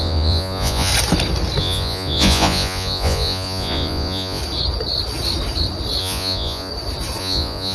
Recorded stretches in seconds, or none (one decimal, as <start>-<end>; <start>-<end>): 0.9-1.6; 4.4-6.0; 6.7-7.2